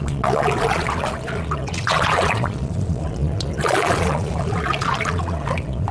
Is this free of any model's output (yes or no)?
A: no